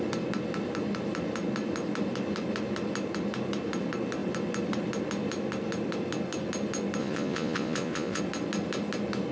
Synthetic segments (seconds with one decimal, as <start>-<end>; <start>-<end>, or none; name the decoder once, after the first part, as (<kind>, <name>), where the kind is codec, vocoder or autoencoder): 7.0-8.2 (vocoder, Vocos)